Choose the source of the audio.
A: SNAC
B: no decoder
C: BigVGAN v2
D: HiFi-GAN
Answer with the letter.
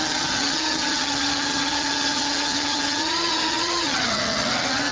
D